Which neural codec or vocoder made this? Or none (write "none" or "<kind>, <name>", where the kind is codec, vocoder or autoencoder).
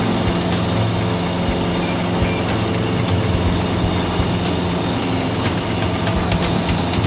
none